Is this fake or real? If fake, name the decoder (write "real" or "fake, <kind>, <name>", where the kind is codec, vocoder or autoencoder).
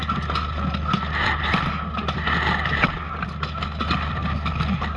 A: real